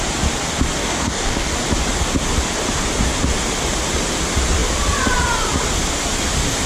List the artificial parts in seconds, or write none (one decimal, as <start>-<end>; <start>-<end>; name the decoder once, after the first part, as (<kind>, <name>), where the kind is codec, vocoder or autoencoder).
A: 0.8-1.5 (codec, DAC)